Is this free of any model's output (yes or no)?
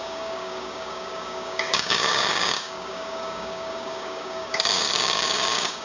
no